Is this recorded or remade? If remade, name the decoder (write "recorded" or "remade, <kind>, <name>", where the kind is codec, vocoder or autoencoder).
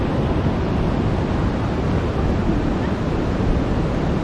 recorded